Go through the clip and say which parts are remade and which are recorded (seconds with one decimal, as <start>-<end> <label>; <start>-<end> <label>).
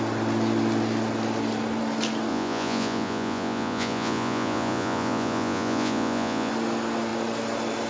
0.0-2.3 recorded; 2.3-6.5 remade; 6.5-7.9 recorded